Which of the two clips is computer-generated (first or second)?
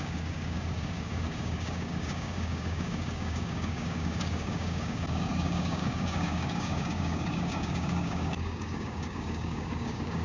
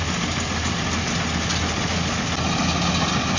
first